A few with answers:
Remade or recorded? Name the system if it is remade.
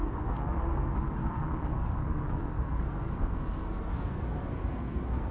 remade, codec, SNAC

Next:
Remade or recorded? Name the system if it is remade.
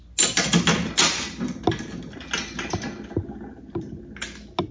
recorded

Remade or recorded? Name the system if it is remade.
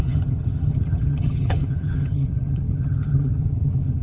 remade, vocoder, HiFi-GAN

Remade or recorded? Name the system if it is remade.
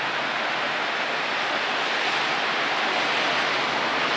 recorded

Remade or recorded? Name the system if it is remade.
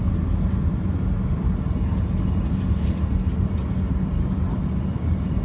recorded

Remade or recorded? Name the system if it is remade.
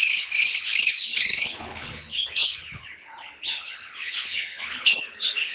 remade, codec, HILCodec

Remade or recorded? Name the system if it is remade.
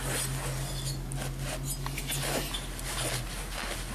recorded